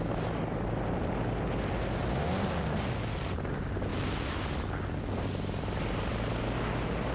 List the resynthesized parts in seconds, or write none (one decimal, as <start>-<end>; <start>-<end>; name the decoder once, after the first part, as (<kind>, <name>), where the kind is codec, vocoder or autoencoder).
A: none